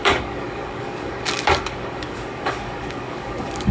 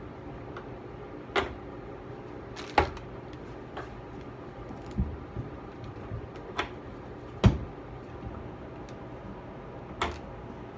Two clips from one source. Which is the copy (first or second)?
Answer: first